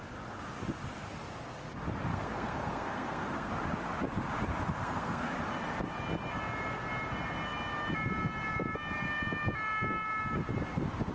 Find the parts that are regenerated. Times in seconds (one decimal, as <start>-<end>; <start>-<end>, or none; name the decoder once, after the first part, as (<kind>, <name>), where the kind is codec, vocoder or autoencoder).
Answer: 2.1-3.5 (codec, SNAC); 4.8-5.3